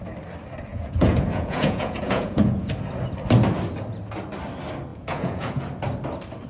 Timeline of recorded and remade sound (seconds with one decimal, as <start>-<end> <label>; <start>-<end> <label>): 0.0-0.7 recorded; 0.7-2.7 remade; 2.7-4.9 recorded; 4.9-5.6 remade; 5.6-6.5 recorded